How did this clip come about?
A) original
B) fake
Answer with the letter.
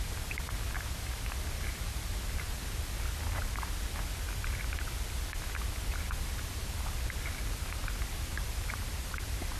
A